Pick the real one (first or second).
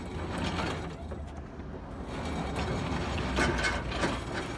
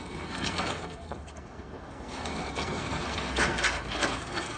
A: first